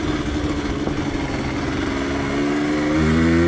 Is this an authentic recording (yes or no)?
yes